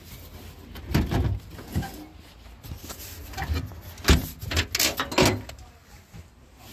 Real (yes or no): yes